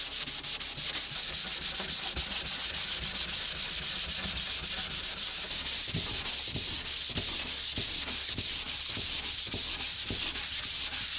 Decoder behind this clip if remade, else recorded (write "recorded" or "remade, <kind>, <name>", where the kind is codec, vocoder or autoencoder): recorded